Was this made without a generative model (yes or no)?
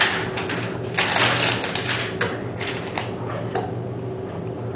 yes